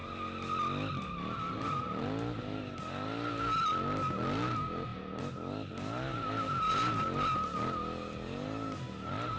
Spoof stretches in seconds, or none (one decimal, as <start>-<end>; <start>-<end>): none